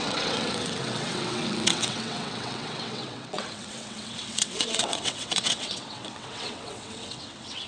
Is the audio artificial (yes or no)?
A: yes